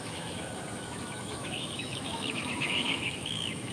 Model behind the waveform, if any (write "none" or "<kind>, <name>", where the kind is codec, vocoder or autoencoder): autoencoder, DAC-VAE